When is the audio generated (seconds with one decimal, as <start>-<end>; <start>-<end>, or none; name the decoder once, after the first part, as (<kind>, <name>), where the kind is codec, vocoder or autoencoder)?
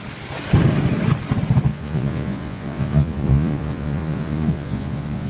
1.7-5.3 (vocoder, Vocos)